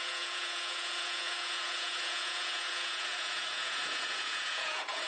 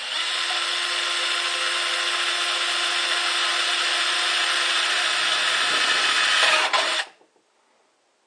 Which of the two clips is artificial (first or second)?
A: first